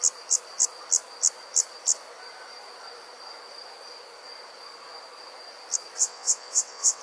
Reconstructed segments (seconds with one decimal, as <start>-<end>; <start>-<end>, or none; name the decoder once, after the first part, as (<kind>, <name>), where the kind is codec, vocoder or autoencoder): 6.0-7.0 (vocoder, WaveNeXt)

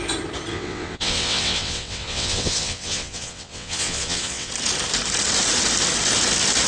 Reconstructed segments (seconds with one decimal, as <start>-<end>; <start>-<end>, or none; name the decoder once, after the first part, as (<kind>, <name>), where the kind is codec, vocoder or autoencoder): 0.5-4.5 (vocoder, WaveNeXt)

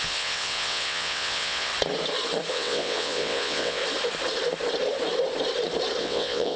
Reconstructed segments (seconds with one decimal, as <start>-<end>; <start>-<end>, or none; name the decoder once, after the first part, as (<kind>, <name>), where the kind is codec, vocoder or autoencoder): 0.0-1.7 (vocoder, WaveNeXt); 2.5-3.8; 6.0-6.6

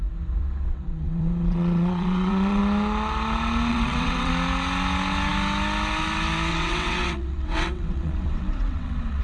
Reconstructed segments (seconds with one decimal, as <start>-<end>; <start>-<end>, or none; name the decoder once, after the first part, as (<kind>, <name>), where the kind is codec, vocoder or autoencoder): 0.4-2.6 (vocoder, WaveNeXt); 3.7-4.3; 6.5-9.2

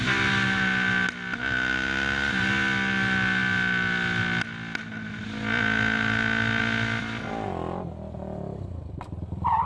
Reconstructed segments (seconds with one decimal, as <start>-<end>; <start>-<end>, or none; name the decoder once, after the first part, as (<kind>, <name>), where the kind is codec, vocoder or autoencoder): none